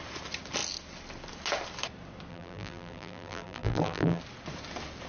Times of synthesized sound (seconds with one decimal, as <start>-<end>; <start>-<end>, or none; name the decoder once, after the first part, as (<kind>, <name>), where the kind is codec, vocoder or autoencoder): 2.3-4.2 (vocoder, BigVGAN v2)